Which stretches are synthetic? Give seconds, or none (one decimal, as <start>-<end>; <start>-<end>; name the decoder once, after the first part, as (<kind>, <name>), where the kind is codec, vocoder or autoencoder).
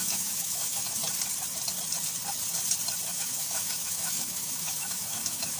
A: 0.0-1.0 (autoencoder, DAC-VAE); 3.1-5.6